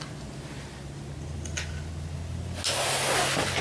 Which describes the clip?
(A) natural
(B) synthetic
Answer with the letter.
A